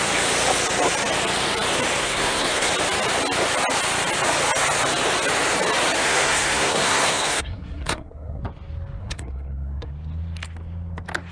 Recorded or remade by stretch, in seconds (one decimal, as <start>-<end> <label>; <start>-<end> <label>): 0.0-2.0 recorded; 2.0-2.7 remade; 2.7-6.0 recorded; 6.0-8.4 remade; 8.4-9.0 recorded; 9.0-9.9 remade; 9.9-11.3 recorded

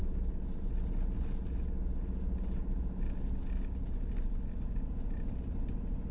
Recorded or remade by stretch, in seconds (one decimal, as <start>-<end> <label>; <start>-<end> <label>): 0.0-6.1 recorded